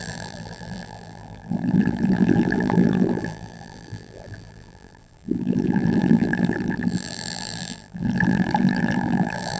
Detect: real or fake fake